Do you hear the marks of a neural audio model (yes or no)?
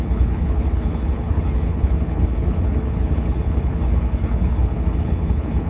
yes